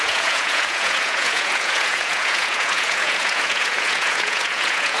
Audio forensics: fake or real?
fake